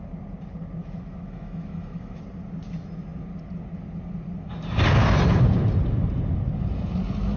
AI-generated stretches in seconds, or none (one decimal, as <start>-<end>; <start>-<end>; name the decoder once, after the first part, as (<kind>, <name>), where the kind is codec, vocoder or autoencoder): 0.8-2.2 (autoencoder, DAC-VAE)